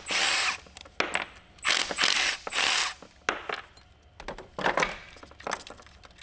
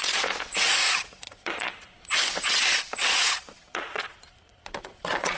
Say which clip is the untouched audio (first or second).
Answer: first